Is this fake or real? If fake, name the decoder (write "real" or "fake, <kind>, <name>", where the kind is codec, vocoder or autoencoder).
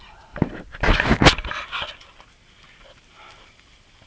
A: real